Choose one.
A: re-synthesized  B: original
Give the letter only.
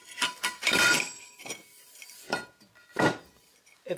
A